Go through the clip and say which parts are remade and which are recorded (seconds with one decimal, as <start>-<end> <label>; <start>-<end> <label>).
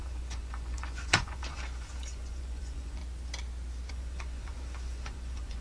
0.0-3.0 remade; 3.0-3.9 recorded; 3.9-5.6 remade